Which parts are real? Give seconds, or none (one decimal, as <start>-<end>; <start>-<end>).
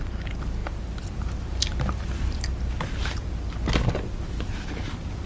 0.0-5.3